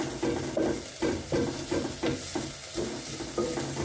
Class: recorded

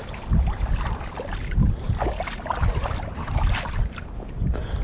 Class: recorded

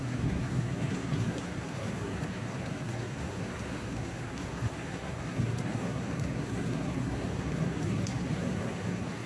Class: remade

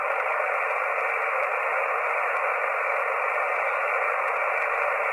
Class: recorded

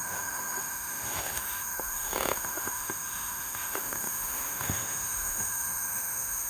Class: remade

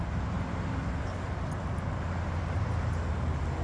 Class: recorded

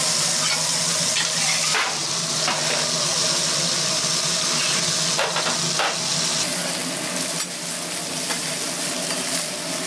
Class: recorded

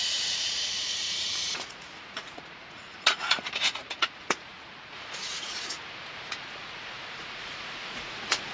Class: remade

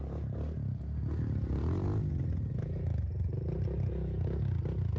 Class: recorded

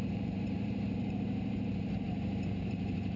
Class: remade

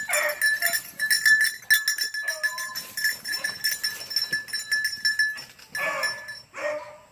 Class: recorded